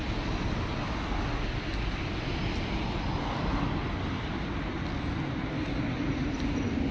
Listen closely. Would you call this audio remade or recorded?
recorded